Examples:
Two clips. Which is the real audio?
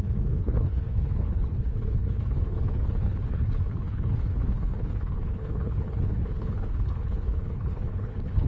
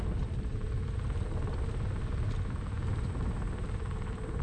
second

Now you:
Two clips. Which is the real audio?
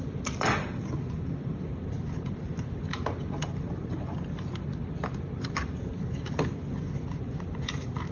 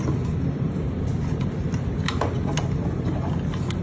second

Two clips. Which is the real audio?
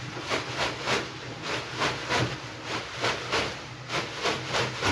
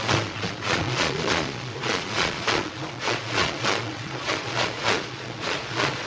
first